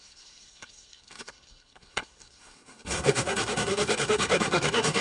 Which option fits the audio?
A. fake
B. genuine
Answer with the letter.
A